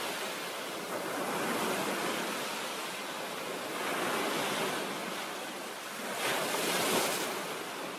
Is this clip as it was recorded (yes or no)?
yes